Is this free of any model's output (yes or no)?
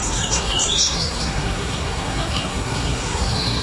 no